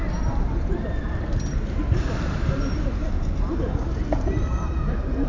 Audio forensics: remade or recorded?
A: recorded